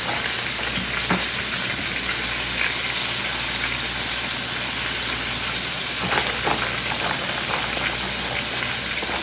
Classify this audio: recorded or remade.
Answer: recorded